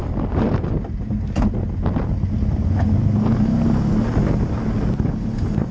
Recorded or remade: recorded